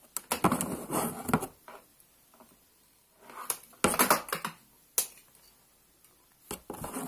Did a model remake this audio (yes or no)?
no